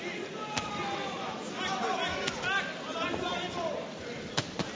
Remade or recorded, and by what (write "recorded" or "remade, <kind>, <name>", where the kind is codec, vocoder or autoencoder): recorded